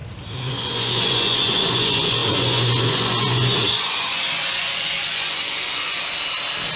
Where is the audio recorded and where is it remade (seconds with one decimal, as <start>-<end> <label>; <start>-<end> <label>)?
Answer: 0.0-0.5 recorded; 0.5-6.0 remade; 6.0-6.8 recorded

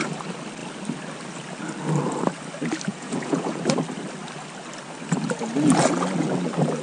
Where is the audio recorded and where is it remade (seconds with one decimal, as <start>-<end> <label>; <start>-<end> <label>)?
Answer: 0.0-2.9 recorded; 2.9-3.6 remade; 3.6-6.8 recorded

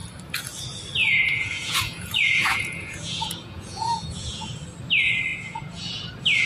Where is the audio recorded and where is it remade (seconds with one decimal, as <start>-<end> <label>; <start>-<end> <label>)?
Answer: 0.0-1.0 recorded; 1.0-4.5 remade; 4.5-5.3 recorded; 5.3-6.1 remade; 6.1-6.5 recorded

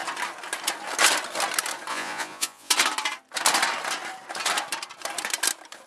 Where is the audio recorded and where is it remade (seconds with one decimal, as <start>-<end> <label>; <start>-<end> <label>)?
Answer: 0.0-1.9 recorded; 1.9-2.7 remade; 2.7-5.9 recorded

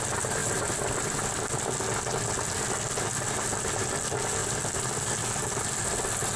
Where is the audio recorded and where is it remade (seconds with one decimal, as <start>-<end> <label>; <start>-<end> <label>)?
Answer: 0.0-6.4 recorded